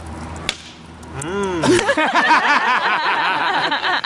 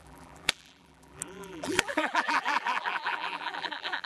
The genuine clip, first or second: first